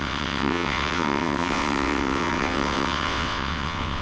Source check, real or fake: fake